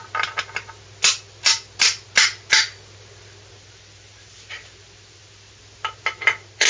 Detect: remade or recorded recorded